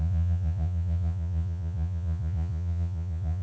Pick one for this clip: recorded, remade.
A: remade